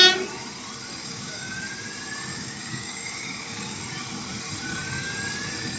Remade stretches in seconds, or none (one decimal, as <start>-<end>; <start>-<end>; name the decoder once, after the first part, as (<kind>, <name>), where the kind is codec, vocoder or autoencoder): 1.0-1.6 (codec, DAC); 2.3-3.8